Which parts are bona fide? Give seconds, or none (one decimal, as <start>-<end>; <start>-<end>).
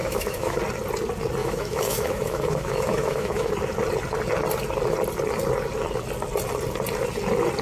0.6-1.4; 3.5-7.6